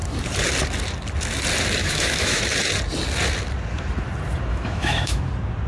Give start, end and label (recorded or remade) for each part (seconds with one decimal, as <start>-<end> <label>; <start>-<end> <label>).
0.0-1.8 recorded; 1.8-2.4 remade; 2.4-4.5 recorded; 4.5-5.2 remade; 5.2-5.7 recorded